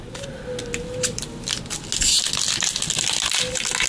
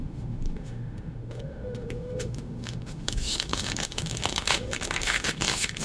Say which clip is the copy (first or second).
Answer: second